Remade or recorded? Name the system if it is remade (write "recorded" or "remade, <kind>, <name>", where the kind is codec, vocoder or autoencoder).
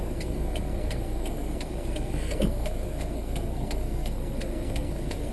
remade, codec, SNAC